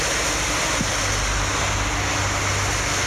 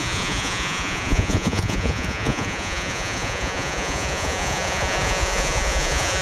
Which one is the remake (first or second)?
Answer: second